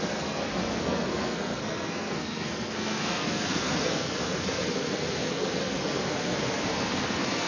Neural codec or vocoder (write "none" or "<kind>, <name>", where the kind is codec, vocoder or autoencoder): codec, SNAC